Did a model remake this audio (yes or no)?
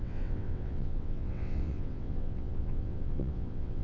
yes